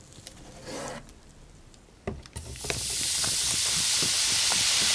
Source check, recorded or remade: remade